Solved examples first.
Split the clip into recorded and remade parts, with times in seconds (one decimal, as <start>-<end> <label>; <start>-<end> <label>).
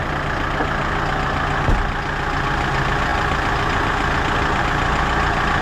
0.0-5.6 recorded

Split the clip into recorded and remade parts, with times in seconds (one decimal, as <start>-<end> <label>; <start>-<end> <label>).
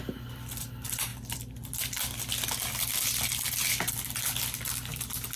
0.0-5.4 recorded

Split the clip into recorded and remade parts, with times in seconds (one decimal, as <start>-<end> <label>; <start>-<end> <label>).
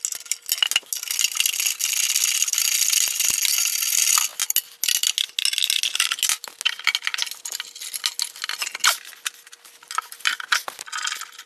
0.0-11.5 recorded